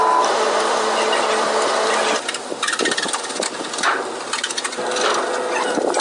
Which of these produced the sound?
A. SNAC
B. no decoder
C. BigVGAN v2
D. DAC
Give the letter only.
B